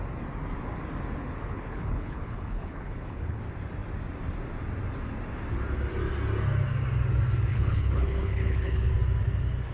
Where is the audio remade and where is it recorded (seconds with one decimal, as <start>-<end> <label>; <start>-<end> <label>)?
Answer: 0.0-1.5 recorded; 1.5-3.4 remade; 3.4-7.5 recorded; 7.5-8.9 remade; 8.9-9.7 recorded